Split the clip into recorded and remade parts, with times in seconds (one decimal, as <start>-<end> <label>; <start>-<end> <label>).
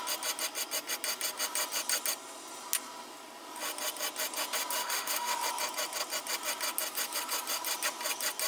0.0-4.8 recorded; 4.8-5.3 remade; 5.3-8.5 recorded